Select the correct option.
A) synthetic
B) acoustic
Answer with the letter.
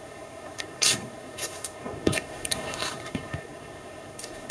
A